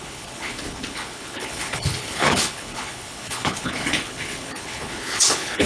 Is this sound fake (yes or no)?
yes